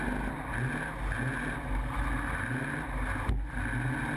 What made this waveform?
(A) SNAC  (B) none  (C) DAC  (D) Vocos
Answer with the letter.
B